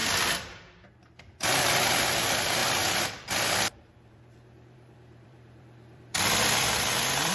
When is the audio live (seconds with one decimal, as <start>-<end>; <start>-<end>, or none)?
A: 0.0-1.2